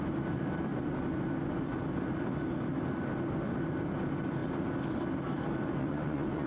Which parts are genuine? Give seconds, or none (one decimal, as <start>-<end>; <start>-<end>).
0.0-5.8